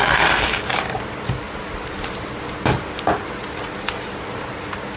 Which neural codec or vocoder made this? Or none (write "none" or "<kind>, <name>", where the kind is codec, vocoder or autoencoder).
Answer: vocoder, BigVGAN v2